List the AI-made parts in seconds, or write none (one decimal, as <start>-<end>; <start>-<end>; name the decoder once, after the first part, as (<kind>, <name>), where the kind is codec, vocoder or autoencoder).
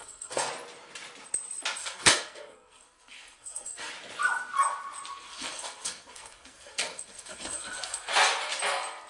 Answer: 0.0-0.5 (codec, SNAC); 1.8-3.9; 5.1-8.1